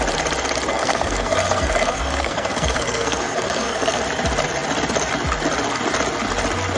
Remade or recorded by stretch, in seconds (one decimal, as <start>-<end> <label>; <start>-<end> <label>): 0.0-0.7 recorded; 0.7-4.0 remade; 4.0-6.8 recorded